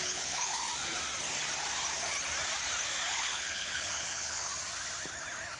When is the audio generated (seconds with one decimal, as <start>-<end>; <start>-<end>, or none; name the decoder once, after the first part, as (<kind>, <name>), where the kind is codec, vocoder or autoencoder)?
0.0-0.7 (codec, HILCodec); 3.1-4.5